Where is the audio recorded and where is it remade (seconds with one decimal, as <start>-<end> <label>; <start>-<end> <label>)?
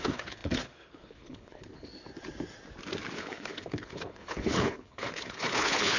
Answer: 0.0-1.9 remade; 1.9-3.2 recorded; 3.2-6.0 remade